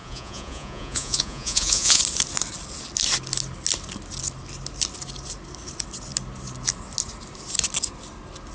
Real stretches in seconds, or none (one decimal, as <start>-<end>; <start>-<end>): 2.0-8.5